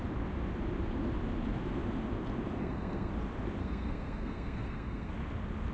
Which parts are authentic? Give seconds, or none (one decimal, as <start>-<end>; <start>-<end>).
0.0-2.6; 3.1-3.6; 5.1-5.7